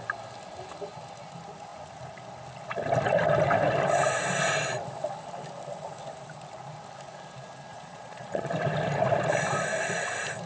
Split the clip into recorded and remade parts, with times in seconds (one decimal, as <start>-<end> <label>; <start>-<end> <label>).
0.0-7.7 recorded; 7.7-8.5 remade; 8.5-10.5 recorded